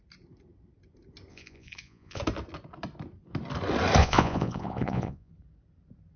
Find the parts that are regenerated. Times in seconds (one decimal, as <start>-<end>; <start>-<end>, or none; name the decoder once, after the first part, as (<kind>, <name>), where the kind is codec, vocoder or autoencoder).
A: 1.3-2.2 (vocoder, Vocos); 4.0-5.3